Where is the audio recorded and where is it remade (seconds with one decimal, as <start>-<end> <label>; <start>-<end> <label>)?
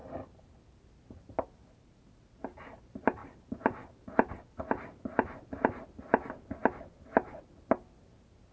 0.0-8.5 recorded